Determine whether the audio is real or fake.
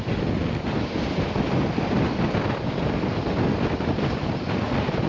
real